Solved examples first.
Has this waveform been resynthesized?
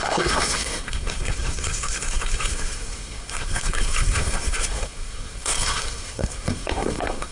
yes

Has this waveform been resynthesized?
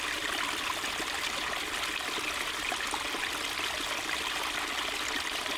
no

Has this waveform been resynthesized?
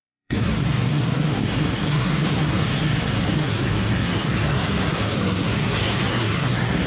yes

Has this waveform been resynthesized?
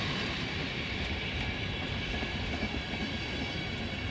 no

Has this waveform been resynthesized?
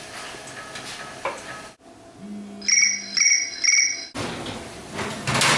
no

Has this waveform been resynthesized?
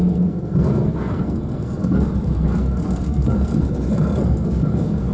yes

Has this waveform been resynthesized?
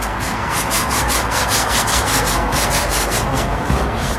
yes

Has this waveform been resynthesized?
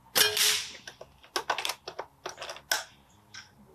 no